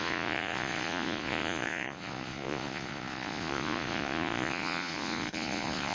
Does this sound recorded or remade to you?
remade